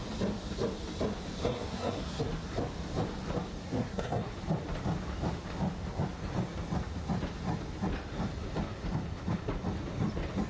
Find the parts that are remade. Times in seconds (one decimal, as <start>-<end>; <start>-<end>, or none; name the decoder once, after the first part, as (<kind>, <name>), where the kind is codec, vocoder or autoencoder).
1.4-2.2 (codec, SNAC); 3.7-4.3